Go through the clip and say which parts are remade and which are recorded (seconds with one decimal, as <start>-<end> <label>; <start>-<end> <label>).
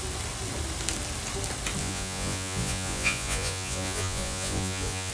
0.0-1.8 recorded; 1.8-5.1 remade